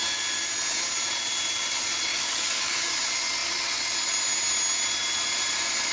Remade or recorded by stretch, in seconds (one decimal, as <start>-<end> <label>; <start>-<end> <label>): 0.0-2.1 recorded; 2.1-2.9 remade; 2.9-5.9 recorded